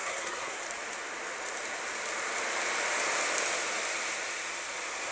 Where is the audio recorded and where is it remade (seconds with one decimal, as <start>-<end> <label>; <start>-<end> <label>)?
0.0-0.6 remade; 0.6-5.1 recorded